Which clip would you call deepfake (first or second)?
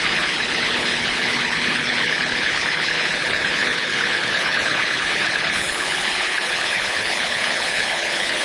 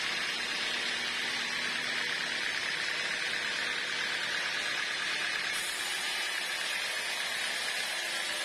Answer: first